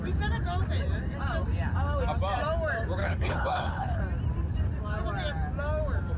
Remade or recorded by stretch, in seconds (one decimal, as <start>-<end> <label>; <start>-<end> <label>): 0.0-3.0 recorded; 3.0-4.0 remade; 4.0-6.2 recorded